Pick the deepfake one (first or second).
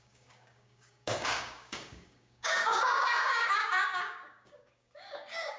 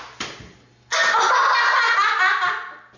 first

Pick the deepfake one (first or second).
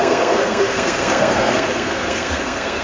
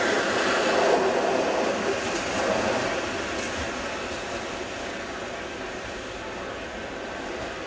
first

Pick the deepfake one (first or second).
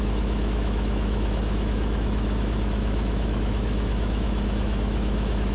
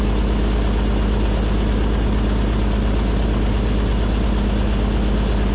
first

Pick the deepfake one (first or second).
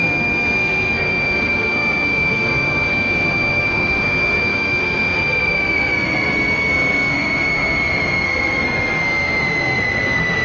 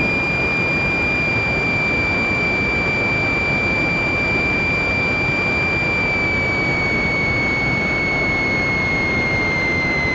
first